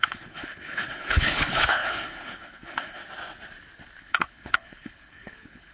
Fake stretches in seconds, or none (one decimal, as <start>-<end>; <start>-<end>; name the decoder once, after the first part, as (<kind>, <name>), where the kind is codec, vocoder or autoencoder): 0.0-3.0 (codec, HILCodec); 4.0-5.7